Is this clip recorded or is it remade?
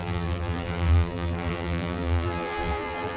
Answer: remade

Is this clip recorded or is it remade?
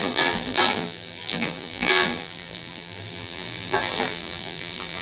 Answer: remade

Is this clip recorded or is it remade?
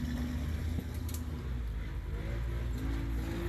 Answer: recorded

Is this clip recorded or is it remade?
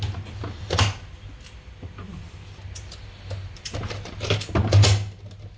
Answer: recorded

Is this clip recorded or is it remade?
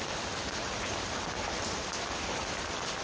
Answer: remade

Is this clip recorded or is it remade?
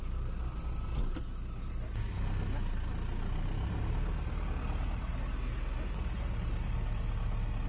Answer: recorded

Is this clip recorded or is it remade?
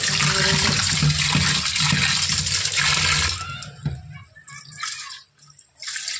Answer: recorded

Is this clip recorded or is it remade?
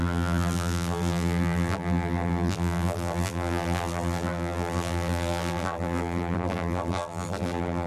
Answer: remade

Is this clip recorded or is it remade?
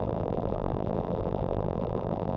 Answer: remade